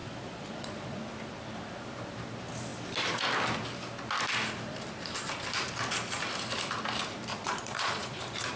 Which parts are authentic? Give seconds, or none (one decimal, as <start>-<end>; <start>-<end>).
1.0-7.3; 8.2-8.6